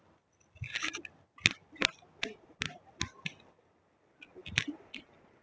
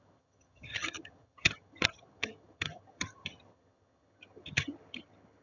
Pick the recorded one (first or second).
first